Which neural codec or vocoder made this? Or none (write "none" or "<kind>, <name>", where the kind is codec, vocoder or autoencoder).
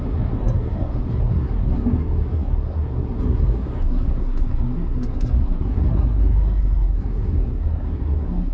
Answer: codec, SNAC